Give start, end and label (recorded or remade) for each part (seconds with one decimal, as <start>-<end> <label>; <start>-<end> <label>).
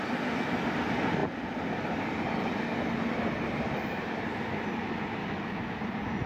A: 0.0-5.2 recorded; 5.2-5.8 remade; 5.8-6.3 recorded